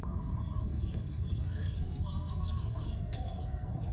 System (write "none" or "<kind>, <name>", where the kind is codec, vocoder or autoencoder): codec, SNAC